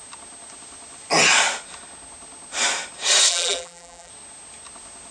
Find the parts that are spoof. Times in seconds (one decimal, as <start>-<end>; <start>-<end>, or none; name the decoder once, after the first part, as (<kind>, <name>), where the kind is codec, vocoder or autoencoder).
3.3-4.1 (vocoder, BigVGAN v2)